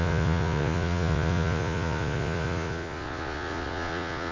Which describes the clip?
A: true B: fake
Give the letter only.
B